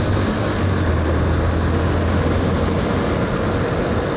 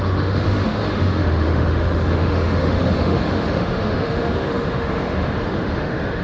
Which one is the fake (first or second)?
second